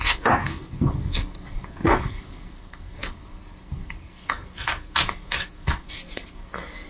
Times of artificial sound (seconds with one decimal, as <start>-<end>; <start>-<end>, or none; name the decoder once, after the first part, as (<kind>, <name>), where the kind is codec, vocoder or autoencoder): 0.0-6.9 (codec, SNAC)